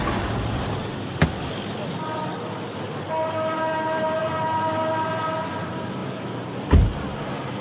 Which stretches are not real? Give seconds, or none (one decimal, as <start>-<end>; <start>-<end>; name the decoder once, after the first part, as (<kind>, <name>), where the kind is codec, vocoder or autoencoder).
none